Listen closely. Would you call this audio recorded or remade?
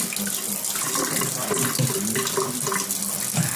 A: recorded